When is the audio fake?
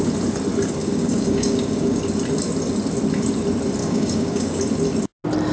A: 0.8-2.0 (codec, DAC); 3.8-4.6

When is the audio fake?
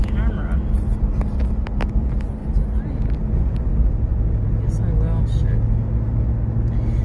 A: none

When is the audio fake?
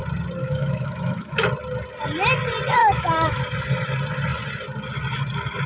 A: 0.4-1.4 (autoencoder, DAC-VAE); 2.8-3.4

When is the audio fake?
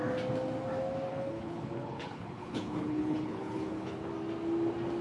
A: 1.1-4.1 (codec, HILCodec)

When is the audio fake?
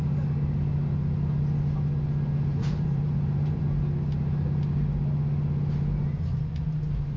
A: 2.5-3.6 (vocoder, BigVGAN v2)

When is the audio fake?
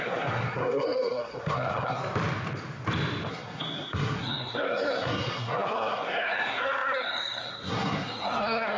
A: 0.0-2.0 (codec, SNAC); 3.3-8.8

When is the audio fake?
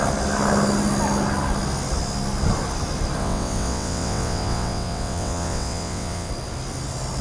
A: 3.2-6.3 (vocoder, WaveNeXt)